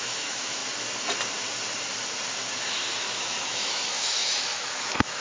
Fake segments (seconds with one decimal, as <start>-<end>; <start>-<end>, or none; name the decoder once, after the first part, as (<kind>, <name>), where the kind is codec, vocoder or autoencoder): 0.0-0.6 (autoencoder, DAC-VAE); 3.0-5.2